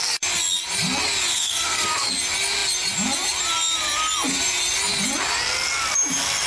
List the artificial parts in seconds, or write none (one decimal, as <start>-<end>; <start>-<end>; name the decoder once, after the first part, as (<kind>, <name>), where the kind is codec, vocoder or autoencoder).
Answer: 1.3-2.1 (codec, SNAC)